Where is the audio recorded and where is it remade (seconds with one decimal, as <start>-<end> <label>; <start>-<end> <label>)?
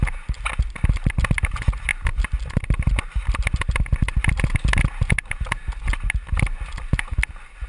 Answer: 0.0-7.7 recorded